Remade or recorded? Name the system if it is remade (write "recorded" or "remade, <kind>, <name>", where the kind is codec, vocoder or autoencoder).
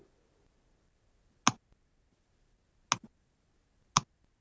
recorded